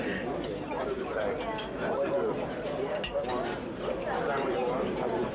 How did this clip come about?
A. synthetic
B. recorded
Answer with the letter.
A